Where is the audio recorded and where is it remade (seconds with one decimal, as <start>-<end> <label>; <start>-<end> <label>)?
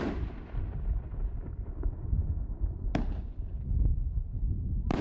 0.0-2.2 remade; 2.2-4.4 recorded; 4.4-5.0 remade